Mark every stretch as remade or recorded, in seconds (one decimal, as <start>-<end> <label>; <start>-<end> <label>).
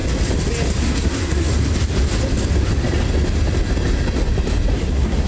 0.0-0.8 recorded; 0.8-1.5 remade; 1.5-4.7 recorded; 4.7-5.3 remade